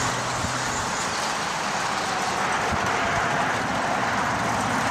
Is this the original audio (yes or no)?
yes